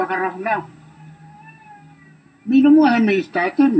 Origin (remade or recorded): recorded